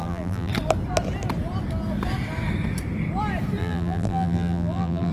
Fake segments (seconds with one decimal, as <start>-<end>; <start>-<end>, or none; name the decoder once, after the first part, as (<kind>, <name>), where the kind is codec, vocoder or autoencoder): 0.0-0.5 (vocoder, BigVGAN v2); 3.6-5.1